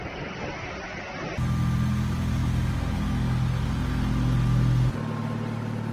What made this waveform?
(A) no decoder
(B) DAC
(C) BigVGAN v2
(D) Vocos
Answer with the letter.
A